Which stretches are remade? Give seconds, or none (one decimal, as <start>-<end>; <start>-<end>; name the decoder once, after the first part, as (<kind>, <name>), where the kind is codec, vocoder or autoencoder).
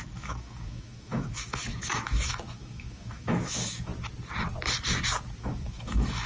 0.0-3.9 (autoencoder, DAC-VAE); 5.4-6.3